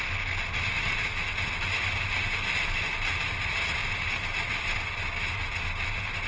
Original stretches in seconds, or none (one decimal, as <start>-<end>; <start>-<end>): 0.0-6.3